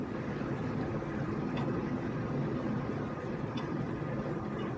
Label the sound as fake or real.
real